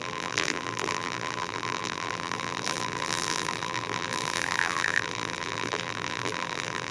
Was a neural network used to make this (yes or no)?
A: yes